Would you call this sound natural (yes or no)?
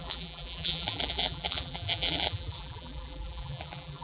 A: no